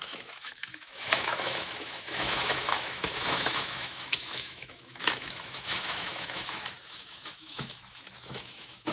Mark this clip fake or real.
fake